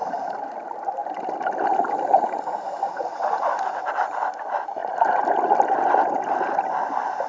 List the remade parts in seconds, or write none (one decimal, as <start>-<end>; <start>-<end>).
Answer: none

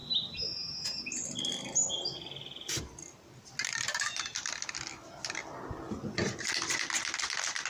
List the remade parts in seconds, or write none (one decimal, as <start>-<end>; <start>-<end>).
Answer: none

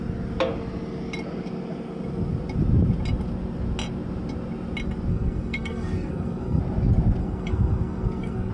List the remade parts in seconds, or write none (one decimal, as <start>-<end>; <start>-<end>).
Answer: 5.1-6.6; 7.2-8.5

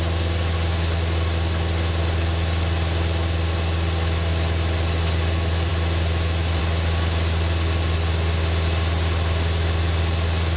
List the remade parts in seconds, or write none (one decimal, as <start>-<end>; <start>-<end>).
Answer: none

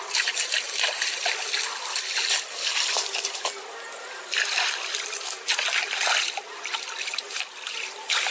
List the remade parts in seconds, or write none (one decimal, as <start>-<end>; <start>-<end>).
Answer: none